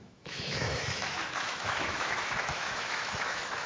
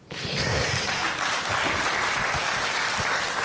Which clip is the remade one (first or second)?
first